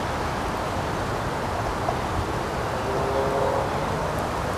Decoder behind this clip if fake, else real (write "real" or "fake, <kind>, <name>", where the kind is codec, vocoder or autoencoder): real